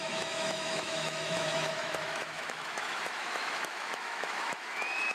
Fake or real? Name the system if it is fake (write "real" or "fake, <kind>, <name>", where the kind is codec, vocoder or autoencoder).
fake, autoencoder, DAC-VAE